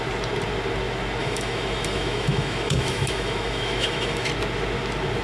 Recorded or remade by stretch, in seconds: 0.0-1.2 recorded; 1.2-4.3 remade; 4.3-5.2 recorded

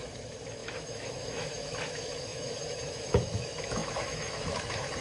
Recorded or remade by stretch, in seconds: 0.0-5.0 remade